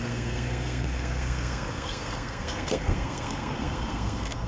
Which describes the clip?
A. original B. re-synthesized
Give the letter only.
B